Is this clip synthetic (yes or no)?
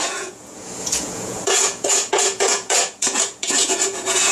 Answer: yes